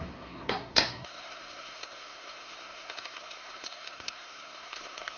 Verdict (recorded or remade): remade